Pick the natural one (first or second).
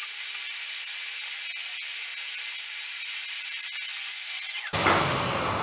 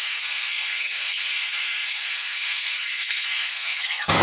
first